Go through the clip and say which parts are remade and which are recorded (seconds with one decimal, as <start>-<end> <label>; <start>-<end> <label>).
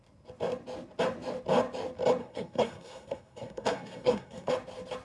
0.0-2.2 recorded; 2.2-4.5 remade; 4.5-5.0 recorded